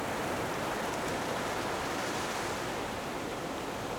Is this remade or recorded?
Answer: recorded